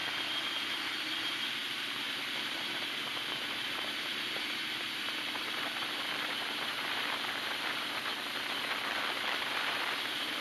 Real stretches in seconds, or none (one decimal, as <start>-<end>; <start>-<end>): 0.0-0.5; 8.1-9.4